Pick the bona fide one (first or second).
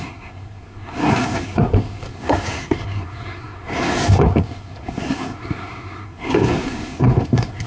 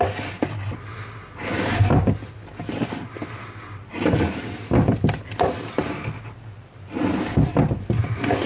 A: second